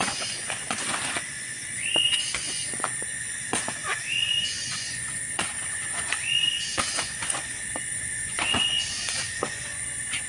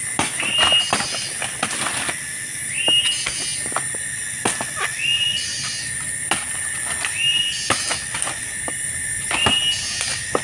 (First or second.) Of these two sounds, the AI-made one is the first